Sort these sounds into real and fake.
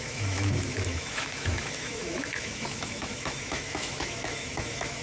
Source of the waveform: fake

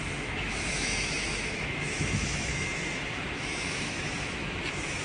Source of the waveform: fake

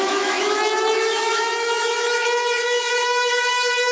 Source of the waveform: fake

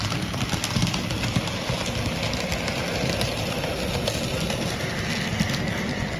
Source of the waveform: real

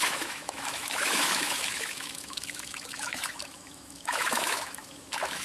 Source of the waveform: fake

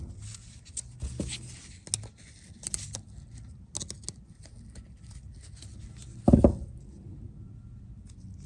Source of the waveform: real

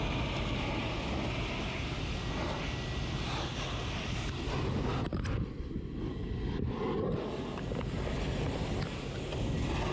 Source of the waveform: real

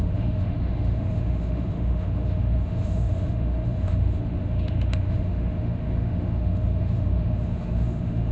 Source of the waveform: fake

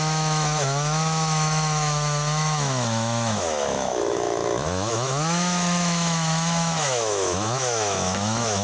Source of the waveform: fake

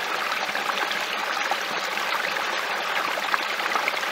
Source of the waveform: real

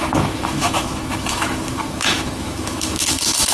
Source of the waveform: fake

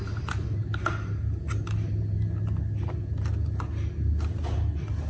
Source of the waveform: real